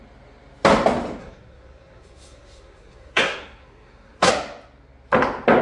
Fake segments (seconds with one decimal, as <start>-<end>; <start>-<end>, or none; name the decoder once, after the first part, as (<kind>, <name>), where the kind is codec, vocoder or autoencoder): 1.2-4.3 (codec, SNAC)